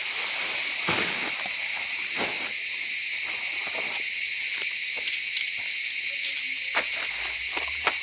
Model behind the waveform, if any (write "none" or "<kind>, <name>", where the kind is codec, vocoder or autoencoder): none